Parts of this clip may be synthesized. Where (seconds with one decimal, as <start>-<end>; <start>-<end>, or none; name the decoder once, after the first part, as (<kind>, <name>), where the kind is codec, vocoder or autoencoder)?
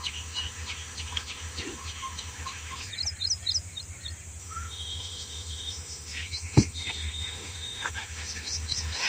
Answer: 0.0-2.9 (autoencoder, DAC-VAE); 4.4-9.1